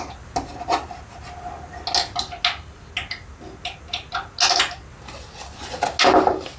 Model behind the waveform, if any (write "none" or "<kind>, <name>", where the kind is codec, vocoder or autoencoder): none